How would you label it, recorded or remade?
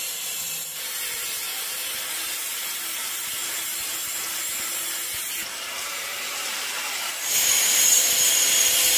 remade